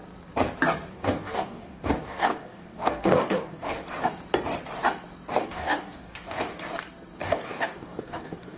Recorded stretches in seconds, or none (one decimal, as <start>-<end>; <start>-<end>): 0.0-0.9; 3.8-5.3; 6.5-7.2